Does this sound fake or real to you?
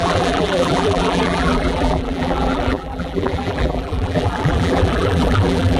fake